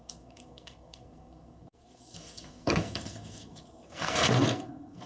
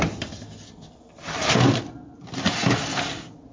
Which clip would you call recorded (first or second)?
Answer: second